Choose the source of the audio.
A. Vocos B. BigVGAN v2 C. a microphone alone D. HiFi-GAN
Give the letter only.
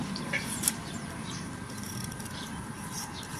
B